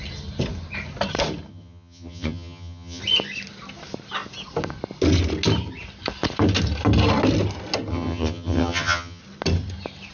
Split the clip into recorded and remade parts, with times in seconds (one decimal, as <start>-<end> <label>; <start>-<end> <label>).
0.0-1.5 recorded; 1.5-3.0 remade; 3.0-7.9 recorded; 7.9-9.2 remade; 9.2-10.1 recorded

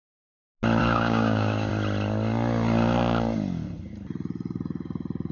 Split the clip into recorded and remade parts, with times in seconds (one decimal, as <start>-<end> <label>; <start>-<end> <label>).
0.0-0.8 recorded; 0.8-1.7 remade; 1.7-5.3 recorded

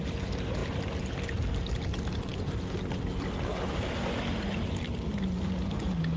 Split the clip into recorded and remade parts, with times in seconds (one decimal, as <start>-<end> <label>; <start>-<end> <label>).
0.0-6.2 recorded

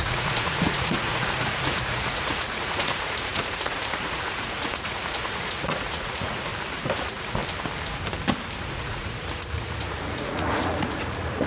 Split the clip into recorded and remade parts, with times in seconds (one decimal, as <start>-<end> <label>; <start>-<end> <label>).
0.0-6.5 remade; 6.5-7.0 recorded; 7.0-7.4 remade; 7.4-8.6 recorded; 8.6-11.5 remade

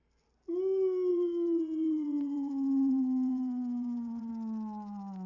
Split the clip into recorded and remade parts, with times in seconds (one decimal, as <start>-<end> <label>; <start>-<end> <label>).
0.0-1.1 recorded; 1.1-4.3 remade; 4.3-5.3 recorded

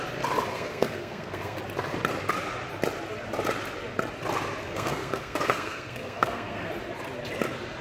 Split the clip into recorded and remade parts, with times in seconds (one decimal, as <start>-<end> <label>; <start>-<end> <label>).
0.0-0.5 recorded; 0.5-1.6 remade; 1.6-4.6 recorded; 4.6-6.7 remade; 6.7-7.8 recorded

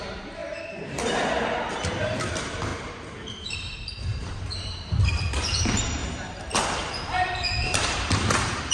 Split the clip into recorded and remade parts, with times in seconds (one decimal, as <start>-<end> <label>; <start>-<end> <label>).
0.0-2.7 remade; 2.7-3.3 recorded; 3.3-6.0 remade; 6.0-6.9 recorded; 6.9-8.7 remade

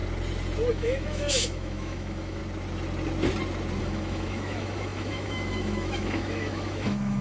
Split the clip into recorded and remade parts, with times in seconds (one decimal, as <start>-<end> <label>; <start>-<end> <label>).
0.0-0.7 recorded; 0.7-2.4 remade; 2.4-3.8 recorded; 3.8-7.2 remade